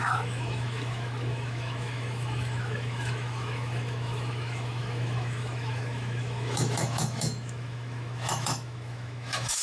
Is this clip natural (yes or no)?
no